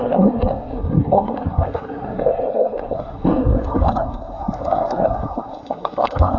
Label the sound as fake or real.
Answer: fake